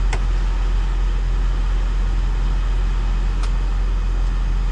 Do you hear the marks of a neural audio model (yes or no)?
no